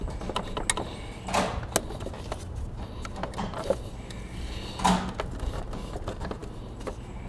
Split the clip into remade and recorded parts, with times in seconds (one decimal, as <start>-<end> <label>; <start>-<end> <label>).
0.0-7.3 recorded

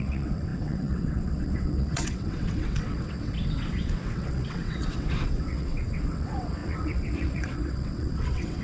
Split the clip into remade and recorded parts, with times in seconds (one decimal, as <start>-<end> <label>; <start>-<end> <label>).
0.0-8.6 remade

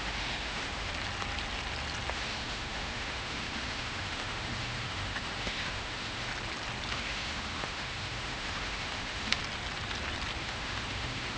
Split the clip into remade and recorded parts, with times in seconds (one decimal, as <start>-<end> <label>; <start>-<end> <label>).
0.0-0.9 remade; 0.9-2.1 recorded; 2.1-6.3 remade; 6.3-6.9 recorded; 6.9-9.4 remade; 9.4-10.4 recorded; 10.4-11.4 remade

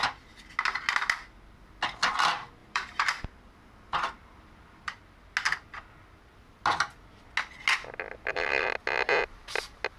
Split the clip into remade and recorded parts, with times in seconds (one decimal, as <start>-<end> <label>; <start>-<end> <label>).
0.0-2.6 recorded; 2.6-5.0 remade; 5.0-10.0 recorded

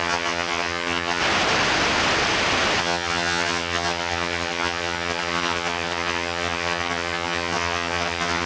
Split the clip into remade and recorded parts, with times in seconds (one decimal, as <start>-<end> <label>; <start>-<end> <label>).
0.0-1.2 remade; 1.2-2.8 recorded; 2.8-8.5 remade